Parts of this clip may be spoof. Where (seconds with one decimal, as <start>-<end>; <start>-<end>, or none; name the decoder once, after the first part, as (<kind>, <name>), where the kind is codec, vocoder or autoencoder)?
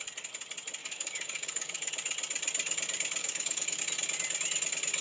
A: 0.8-1.9 (codec, DAC); 3.2-3.8